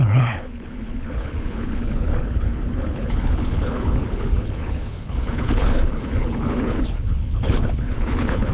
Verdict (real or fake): fake